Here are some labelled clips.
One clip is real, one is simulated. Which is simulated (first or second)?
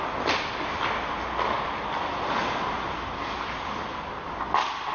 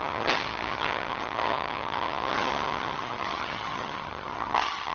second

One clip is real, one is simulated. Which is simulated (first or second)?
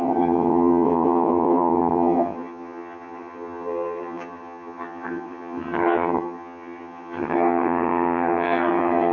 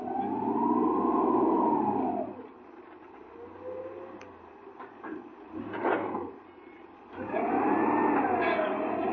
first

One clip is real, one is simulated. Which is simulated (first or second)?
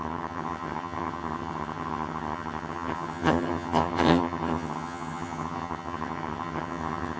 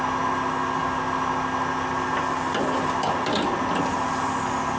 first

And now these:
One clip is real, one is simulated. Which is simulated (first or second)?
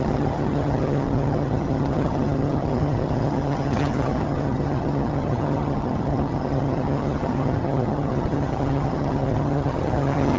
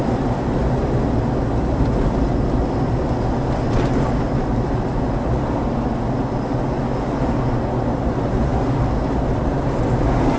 first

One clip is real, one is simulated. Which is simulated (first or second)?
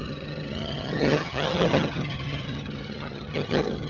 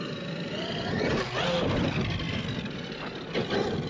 first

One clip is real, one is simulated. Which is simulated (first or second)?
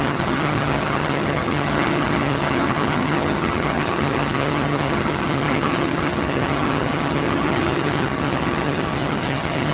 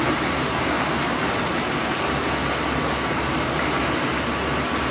first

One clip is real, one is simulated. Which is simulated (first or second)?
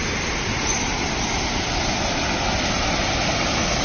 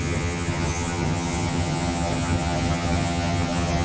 second